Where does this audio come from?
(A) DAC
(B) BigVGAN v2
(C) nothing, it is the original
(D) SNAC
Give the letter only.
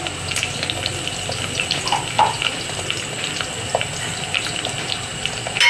C